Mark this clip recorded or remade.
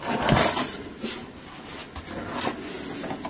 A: recorded